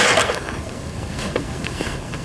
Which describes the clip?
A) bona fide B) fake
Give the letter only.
B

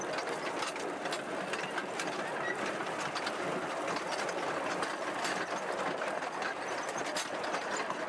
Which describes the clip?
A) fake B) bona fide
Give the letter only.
B